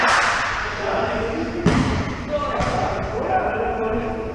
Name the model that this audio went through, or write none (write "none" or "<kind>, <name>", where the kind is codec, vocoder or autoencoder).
none